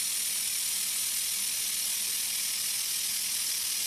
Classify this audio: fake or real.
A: real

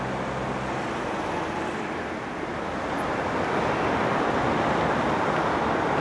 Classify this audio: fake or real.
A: real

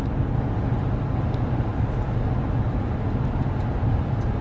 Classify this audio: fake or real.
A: real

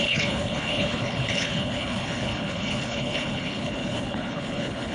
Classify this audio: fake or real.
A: fake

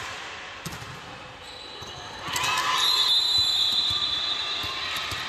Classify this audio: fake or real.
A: real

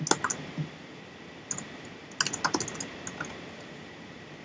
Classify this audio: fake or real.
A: real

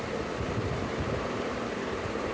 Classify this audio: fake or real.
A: fake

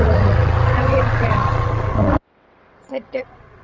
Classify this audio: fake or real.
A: fake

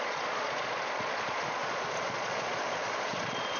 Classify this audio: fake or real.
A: fake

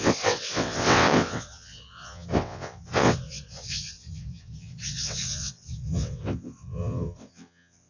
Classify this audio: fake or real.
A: fake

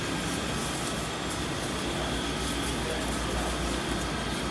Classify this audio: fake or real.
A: real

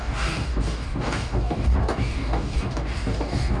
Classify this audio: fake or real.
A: fake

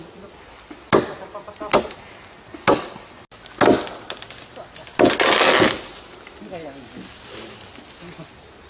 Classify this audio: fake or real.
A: real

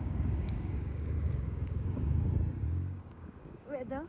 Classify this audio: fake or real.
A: fake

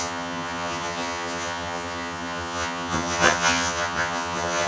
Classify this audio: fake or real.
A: fake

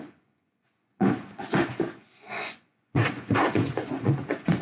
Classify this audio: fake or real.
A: fake